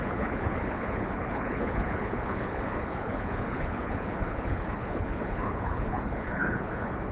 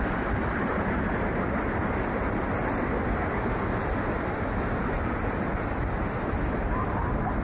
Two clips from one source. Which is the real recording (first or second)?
second